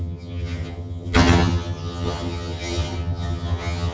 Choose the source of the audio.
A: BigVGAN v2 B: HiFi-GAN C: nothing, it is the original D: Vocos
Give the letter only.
B